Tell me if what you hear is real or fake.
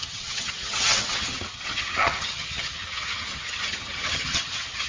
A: fake